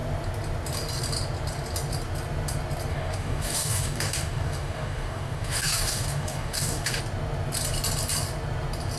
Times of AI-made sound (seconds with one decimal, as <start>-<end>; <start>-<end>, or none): 2.9-7.0